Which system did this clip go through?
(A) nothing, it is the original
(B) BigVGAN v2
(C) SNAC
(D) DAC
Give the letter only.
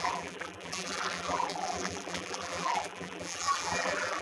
B